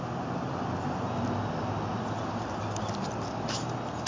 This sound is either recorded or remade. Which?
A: recorded